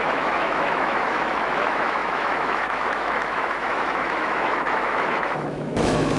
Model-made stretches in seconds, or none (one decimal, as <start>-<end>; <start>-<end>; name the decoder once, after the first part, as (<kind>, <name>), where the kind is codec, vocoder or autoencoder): 0.0-6.2 (autoencoder, DAC-VAE)

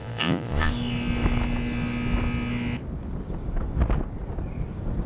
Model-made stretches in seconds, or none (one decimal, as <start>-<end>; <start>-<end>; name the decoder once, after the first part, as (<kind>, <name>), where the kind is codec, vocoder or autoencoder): 0.0-0.7 (vocoder, Vocos)

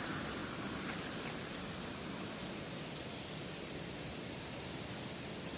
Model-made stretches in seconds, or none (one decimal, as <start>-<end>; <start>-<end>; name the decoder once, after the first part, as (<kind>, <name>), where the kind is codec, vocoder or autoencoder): none

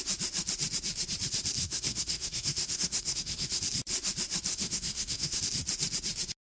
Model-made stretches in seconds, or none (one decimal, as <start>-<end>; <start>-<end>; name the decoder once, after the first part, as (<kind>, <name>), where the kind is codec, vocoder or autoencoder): 1.6-3.6 (codec, SNAC); 4.5-5.4

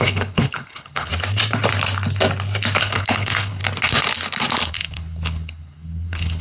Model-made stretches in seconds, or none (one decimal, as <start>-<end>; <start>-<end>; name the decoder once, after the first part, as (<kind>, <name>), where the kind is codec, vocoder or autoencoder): 0.0-1.1 (codec, HILCodec); 2.8-3.6; 4.7-6.4

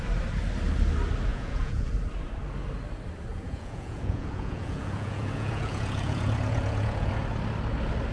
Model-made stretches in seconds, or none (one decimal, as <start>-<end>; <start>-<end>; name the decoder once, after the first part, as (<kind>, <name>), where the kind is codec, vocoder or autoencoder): 1.3-1.9 (vocoder, Vocos); 3.3-7.1

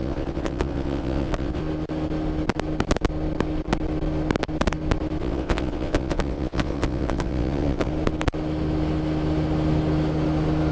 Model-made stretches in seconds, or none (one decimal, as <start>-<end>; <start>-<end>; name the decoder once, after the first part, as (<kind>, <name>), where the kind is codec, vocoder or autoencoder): 0.0-1.6 (vocoder, WaveNeXt); 5.2-7.9

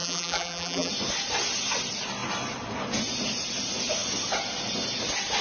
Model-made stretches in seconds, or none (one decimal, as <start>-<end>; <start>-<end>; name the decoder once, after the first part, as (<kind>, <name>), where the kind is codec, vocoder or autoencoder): 0.0-0.9 (vocoder, BigVGAN v2)